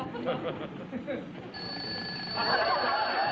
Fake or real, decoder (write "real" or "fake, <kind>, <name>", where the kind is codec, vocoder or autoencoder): real